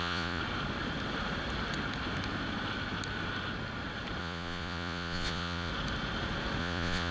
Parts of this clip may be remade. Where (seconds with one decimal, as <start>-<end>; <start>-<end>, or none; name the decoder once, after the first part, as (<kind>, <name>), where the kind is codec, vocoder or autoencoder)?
0.0-0.4 (vocoder, Vocos); 4.2-5.7; 6.6-7.1